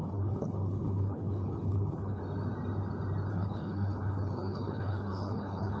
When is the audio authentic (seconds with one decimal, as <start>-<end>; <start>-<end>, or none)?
2.2-3.3